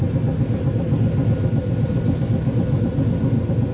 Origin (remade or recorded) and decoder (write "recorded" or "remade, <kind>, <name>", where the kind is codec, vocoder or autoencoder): recorded